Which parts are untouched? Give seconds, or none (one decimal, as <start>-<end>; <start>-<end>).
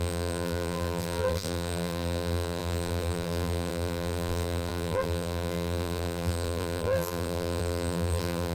none